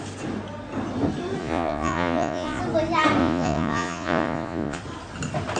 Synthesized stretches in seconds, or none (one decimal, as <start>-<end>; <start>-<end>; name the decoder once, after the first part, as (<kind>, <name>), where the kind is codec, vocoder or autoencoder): 1.4-2.6 (vocoder, Vocos); 3.2-4.8